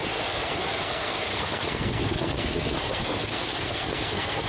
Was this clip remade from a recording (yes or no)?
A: yes